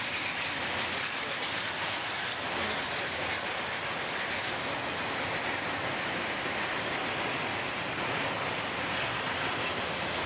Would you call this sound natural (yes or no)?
yes